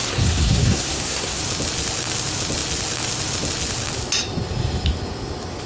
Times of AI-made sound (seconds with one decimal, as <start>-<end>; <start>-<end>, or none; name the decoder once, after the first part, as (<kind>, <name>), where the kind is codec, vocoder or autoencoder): 0.0-1.4 (codec, SNAC)